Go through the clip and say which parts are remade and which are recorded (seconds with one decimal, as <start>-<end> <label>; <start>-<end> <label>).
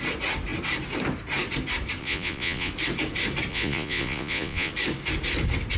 0.0-2.0 recorded; 2.0-2.7 remade; 2.7-3.5 recorded; 3.5-4.7 remade; 4.7-5.8 recorded